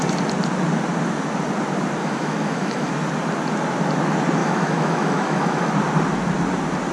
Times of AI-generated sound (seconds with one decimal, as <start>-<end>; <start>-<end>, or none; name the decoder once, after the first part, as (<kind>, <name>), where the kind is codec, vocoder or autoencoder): 2.0-2.9 (autoencoder, DAC-VAE); 4.4-5.7